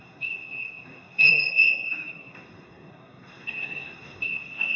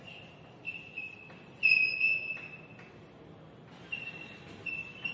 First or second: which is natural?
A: second